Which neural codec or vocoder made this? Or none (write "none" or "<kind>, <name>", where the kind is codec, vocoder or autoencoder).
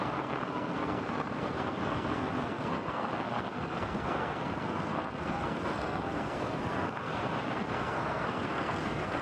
codec, SNAC